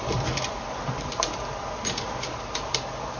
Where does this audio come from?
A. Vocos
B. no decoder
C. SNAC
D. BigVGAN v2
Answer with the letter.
D